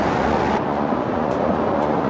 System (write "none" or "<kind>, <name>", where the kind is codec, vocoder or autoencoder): vocoder, Vocos